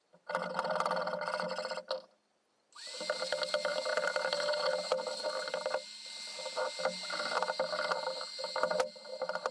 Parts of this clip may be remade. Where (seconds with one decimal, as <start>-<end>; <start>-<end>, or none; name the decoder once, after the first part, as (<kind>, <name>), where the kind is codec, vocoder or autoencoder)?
none